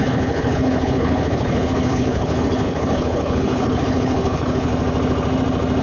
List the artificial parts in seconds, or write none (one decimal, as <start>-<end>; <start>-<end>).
0.0-4.7